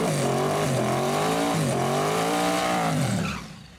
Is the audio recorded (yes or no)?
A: no